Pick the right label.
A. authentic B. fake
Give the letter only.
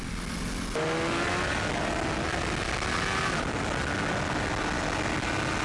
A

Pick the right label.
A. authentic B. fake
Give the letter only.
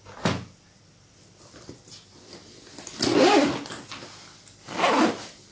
A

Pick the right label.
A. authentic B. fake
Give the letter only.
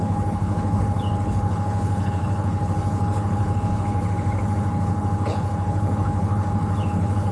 B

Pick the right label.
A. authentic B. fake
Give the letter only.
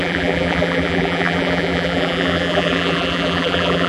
B